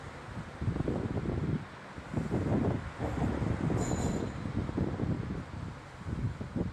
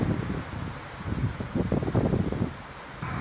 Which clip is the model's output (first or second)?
second